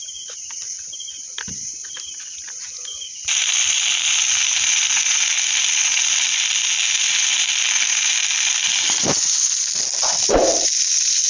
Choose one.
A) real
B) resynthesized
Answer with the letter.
A